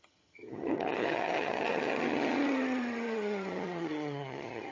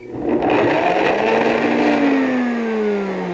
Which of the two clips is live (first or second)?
second